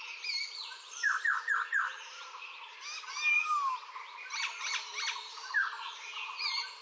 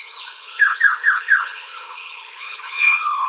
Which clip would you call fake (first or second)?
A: second